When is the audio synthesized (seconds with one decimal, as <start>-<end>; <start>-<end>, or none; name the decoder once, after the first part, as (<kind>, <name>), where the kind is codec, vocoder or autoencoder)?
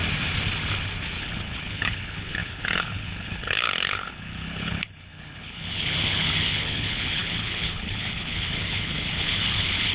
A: 1.2-9.9 (codec, HILCodec)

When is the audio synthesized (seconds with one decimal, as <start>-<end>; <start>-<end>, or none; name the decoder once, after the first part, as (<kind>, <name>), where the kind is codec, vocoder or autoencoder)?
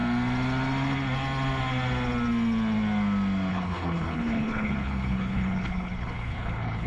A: 3.5-6.9 (codec, HILCodec)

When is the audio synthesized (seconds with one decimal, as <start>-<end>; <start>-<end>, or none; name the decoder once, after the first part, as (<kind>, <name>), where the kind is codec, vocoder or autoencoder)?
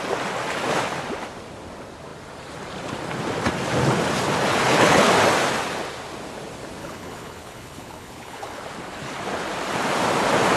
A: 4.5-5.1 (codec, HILCodec); 6.8-8.6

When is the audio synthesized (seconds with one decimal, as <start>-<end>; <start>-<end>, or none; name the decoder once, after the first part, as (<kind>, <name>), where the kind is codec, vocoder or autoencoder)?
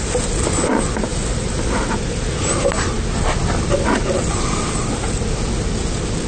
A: none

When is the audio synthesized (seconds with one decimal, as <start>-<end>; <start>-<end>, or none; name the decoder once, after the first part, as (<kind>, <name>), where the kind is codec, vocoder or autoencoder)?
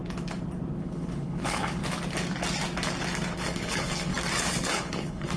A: 0.8-1.8 (codec, HILCodec); 3.4-4.1; 4.7-5.4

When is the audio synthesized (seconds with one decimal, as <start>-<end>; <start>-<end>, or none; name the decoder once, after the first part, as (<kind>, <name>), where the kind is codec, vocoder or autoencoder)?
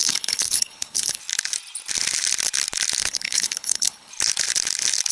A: 0.0-1.2 (codec, HILCodec); 3.0-4.1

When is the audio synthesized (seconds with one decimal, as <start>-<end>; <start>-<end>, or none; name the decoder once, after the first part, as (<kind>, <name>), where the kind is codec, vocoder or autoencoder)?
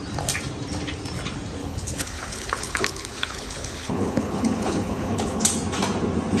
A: 1.6-5.4 (codec, HILCodec)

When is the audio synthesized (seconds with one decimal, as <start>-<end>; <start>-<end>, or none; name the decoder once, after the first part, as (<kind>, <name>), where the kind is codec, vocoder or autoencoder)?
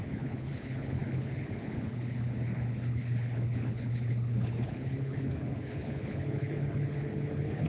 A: 0.0-7.7 (codec, HILCodec)